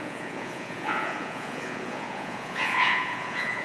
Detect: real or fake fake